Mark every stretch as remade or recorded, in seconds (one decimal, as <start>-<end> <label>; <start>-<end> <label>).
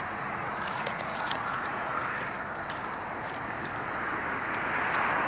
0.0-2.0 remade; 2.0-5.3 recorded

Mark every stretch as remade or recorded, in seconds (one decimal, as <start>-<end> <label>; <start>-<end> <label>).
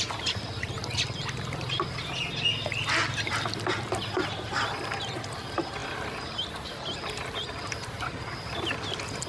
0.0-9.3 recorded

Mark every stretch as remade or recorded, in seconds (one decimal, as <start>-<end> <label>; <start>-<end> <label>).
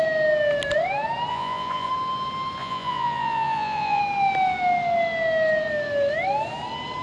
0.0-1.3 recorded; 1.3-1.9 remade; 1.9-2.6 recorded; 2.6-4.0 remade; 4.0-7.0 recorded